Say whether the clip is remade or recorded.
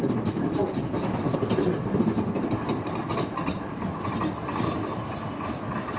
recorded